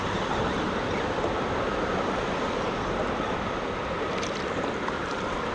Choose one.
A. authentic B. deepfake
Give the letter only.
A